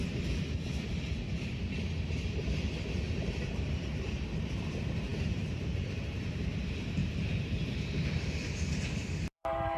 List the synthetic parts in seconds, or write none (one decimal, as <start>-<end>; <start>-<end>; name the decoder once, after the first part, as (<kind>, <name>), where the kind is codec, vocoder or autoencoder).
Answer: 0.0-9.8 (vocoder, BigVGAN v2)